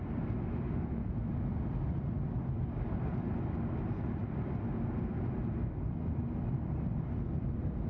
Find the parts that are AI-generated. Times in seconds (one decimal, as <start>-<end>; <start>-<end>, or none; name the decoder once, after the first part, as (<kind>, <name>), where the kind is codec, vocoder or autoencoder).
none